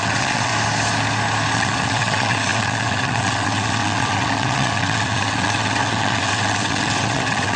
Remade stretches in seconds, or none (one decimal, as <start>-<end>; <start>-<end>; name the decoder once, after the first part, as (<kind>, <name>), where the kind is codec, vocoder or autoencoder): 0.0-0.5 (vocoder, WaveNeXt); 1.5-7.6